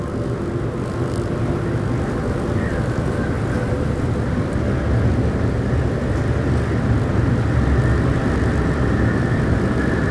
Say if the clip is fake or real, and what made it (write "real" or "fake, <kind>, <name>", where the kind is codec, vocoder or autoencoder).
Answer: real